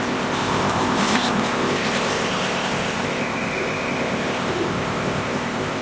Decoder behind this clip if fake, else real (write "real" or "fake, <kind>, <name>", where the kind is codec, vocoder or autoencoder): fake, codec, ZipCodec